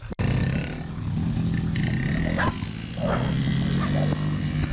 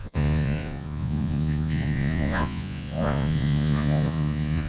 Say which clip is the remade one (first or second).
second